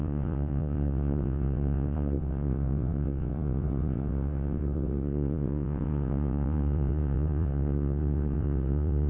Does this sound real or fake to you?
fake